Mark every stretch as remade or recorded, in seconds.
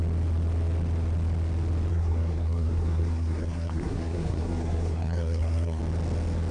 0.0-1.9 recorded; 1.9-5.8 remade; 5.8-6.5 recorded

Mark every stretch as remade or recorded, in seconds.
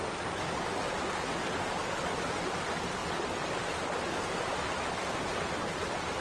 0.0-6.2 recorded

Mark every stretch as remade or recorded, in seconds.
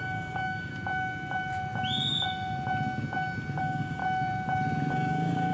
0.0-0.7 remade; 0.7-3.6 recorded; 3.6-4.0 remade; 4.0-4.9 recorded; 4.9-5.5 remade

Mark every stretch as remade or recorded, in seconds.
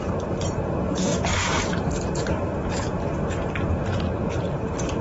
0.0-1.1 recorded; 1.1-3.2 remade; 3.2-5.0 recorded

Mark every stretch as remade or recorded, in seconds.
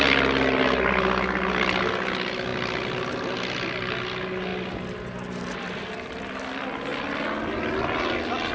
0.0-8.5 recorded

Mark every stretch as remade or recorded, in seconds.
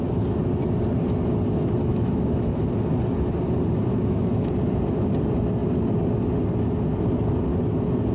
0.0-1.8 recorded; 1.8-2.7 remade; 2.7-3.9 recorded; 3.9-4.5 remade; 4.5-8.1 recorded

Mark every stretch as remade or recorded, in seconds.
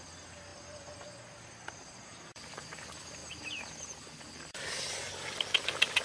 0.0-6.0 recorded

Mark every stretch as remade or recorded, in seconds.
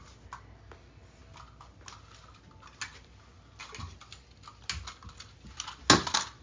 0.0-6.4 recorded